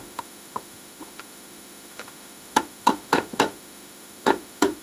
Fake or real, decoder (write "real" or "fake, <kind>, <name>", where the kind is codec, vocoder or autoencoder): fake, autoencoder, DAC-VAE